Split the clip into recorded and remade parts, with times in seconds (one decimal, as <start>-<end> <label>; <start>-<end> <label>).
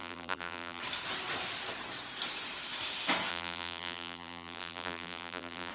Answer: 0.0-0.8 remade; 0.8-3.3 recorded; 3.3-5.7 remade